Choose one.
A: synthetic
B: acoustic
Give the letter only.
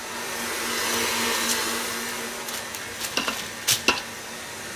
B